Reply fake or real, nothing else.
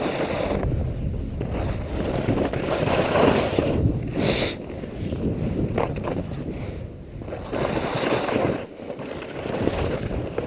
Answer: real